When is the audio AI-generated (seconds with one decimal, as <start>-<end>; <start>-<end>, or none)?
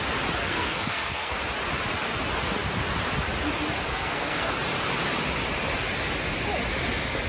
0.4-1.4; 3.9-4.5